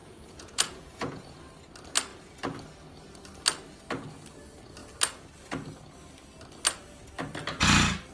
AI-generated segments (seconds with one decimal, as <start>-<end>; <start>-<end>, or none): 0.0-1.2